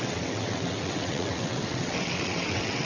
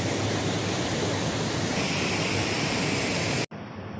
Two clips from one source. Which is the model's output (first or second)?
first